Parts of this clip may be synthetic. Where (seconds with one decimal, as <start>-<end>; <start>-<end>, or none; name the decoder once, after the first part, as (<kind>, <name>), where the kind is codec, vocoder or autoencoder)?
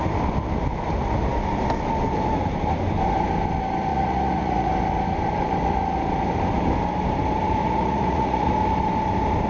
3.9-4.7 (vocoder, Vocos); 7.6-8.5